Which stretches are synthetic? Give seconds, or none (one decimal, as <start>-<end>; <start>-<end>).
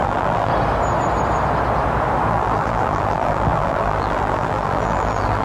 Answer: 0.0-0.5; 2.3-5.4